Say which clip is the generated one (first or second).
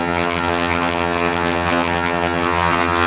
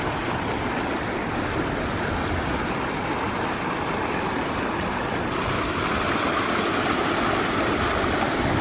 first